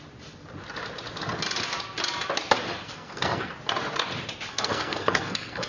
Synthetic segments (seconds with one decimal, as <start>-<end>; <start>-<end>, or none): 2.8-3.5; 4.5-5.7